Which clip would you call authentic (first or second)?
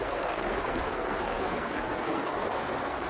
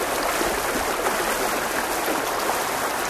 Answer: second